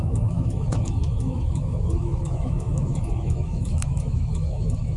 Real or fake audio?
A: fake